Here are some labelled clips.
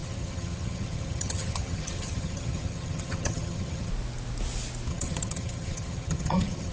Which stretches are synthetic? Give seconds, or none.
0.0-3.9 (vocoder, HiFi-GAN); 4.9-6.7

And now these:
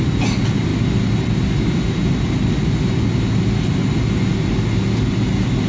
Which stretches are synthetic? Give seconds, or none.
none

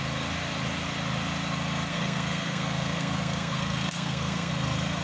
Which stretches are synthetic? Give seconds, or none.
1.9-4.5 (codec, SNAC)

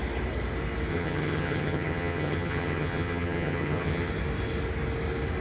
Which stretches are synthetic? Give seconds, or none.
0.9-4.1 (vocoder, HiFi-GAN)

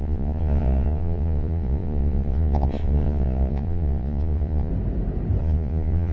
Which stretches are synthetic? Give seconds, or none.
0.0-4.7 (vocoder, Vocos); 5.4-6.1

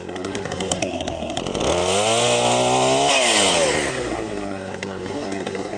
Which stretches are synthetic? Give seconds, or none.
0.0-1.4 (codec, SNAC); 3.9-5.8

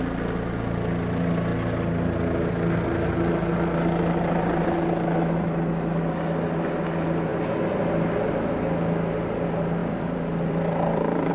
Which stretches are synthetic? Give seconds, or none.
9.8-11.3 (vocoder, BigVGAN v2)